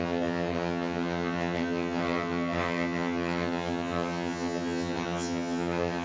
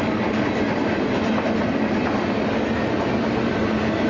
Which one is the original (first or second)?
second